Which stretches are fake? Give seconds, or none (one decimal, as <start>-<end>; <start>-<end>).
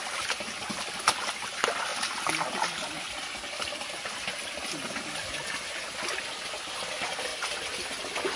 1.9-6.7; 7.3-8.4